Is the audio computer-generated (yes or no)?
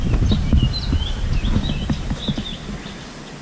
no